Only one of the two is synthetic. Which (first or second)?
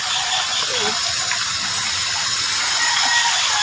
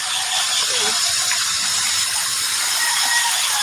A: second